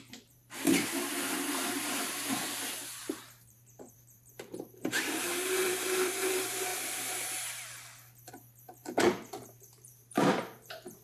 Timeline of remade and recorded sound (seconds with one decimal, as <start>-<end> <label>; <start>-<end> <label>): 0.0-2.4 remade; 2.4-3.0 recorded; 3.0-6.7 remade; 6.7-8.3 recorded; 8.3-11.0 remade